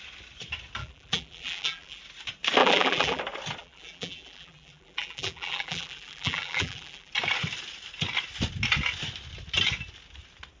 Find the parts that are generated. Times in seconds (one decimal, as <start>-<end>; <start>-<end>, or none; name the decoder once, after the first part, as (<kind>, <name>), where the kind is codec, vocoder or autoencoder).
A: 0.8-2.0 (vocoder, BigVGAN v2); 2.6-3.2; 3.6-7.1